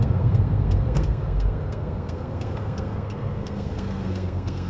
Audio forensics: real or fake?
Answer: fake